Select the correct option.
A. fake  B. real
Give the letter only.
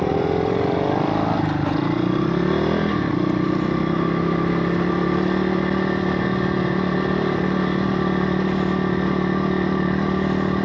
B